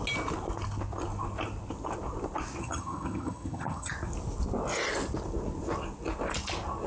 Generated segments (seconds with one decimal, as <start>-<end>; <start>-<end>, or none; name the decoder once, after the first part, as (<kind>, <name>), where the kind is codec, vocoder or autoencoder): 2.6-3.9 (vocoder, HiFi-GAN)